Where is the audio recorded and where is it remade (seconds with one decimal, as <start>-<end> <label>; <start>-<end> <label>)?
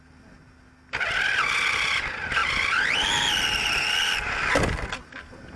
0.0-5.6 recorded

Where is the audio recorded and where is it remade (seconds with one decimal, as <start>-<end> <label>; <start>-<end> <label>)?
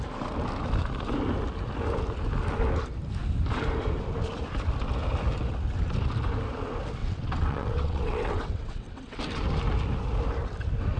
0.0-7.0 recorded; 7.0-9.2 remade; 9.2-11.0 recorded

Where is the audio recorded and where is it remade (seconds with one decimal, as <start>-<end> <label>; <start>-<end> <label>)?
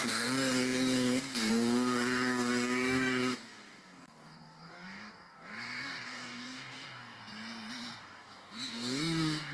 0.0-7.2 remade; 7.2-8.0 recorded; 8.0-9.5 remade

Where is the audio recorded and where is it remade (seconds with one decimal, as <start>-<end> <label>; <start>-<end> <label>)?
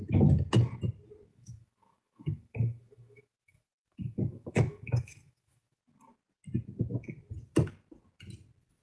0.0-1.3 recorded; 1.3-5.8 remade; 5.8-8.8 recorded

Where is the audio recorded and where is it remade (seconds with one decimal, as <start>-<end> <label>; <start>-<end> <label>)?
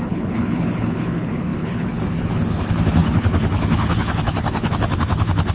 0.0-5.5 remade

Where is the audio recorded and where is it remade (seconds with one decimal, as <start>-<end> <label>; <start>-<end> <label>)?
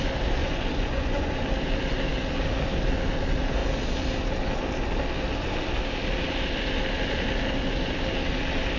0.0-0.4 recorded; 0.4-1.3 remade; 1.3-8.8 recorded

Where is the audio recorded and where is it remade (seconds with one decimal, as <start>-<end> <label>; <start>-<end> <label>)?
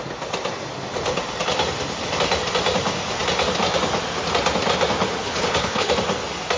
0.0-5.2 recorded; 5.2-5.9 remade; 5.9-6.6 recorded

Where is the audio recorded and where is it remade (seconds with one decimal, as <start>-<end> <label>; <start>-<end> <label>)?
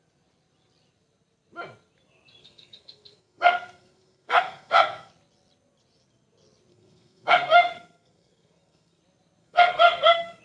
0.0-2.4 recorded; 2.4-5.1 remade; 5.1-6.7 recorded; 6.7-9.0 remade; 9.0-9.4 recorded; 9.4-10.4 remade